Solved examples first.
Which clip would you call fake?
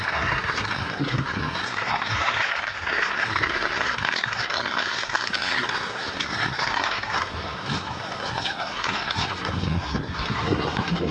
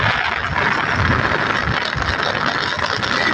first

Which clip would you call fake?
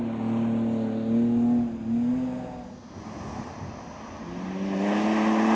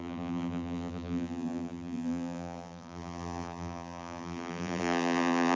second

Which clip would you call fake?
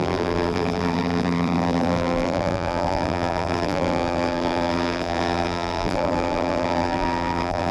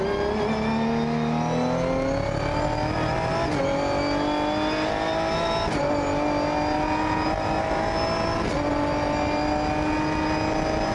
first